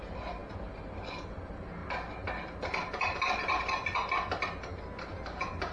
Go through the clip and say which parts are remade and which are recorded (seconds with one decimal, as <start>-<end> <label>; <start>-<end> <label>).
0.0-5.7 recorded